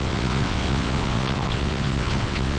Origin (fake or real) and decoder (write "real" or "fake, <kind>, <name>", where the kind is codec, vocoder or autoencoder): fake, vocoder, WaveNeXt